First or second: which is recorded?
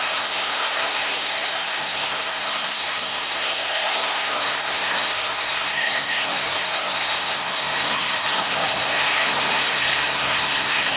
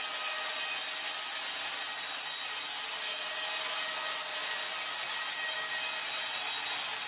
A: second